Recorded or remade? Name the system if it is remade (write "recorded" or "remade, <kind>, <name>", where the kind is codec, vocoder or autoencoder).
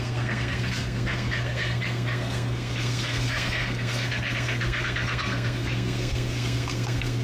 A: remade, codec, SNAC